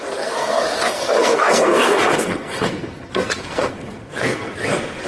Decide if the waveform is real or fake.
fake